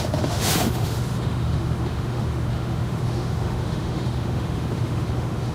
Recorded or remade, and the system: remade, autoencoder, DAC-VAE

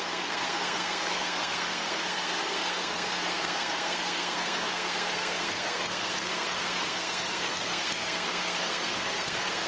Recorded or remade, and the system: remade, codec, SNAC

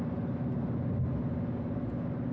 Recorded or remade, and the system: recorded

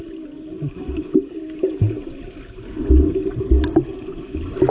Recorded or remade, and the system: recorded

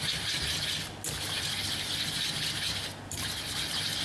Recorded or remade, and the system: recorded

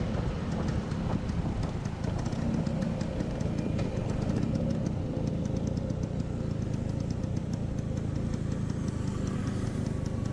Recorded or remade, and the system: recorded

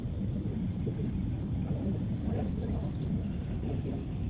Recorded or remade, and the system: recorded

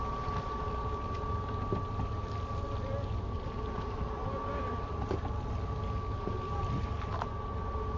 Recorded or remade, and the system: recorded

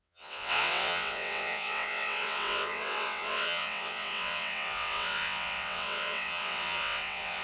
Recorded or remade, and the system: remade, vocoder, WaveNeXt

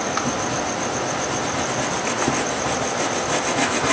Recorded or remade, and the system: recorded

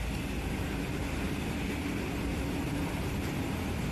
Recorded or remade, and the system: recorded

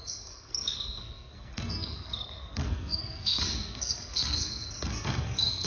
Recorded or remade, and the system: remade, codec, SNAC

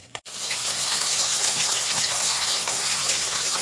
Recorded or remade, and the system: remade, codec, SNAC